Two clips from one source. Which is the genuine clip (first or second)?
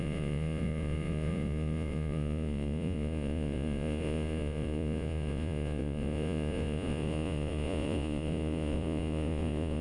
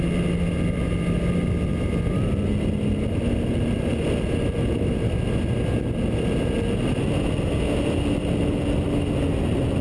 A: second